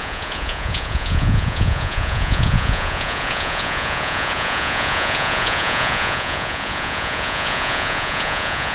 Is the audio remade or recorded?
remade